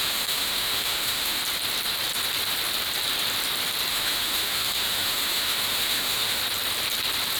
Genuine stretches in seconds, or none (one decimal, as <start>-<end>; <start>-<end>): 1.4-3.9; 6.4-7.4